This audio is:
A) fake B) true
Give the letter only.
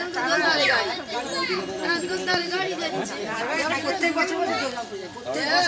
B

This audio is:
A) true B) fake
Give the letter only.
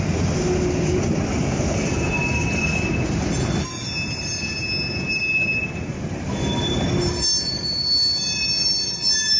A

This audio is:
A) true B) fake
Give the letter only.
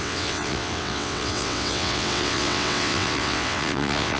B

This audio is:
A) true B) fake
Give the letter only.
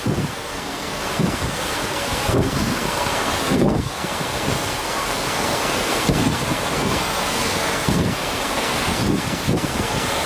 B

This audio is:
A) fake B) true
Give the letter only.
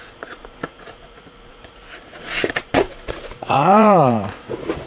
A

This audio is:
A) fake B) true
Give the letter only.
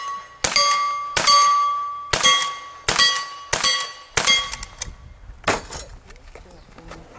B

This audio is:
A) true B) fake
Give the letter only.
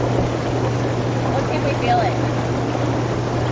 A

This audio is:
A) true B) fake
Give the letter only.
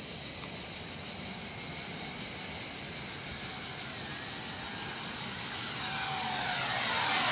A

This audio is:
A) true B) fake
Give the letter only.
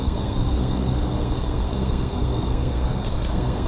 B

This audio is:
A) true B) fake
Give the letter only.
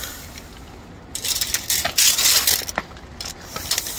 A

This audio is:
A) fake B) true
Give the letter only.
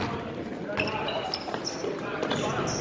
B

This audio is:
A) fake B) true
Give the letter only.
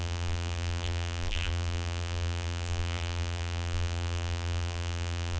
A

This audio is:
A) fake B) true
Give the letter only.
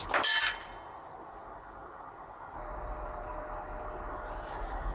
B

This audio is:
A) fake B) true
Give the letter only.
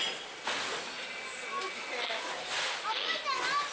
B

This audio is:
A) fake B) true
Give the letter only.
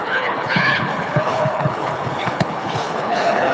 A